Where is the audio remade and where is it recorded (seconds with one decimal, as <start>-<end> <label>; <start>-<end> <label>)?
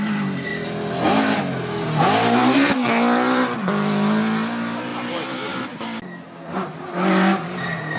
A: 0.0-8.0 recorded